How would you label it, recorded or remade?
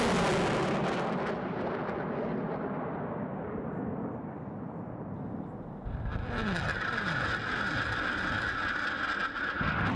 recorded